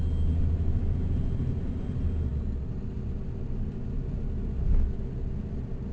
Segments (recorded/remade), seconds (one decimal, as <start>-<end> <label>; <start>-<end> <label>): 0.0-5.9 recorded